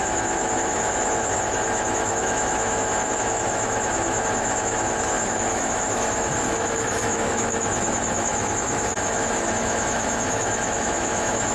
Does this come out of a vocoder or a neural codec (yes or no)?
yes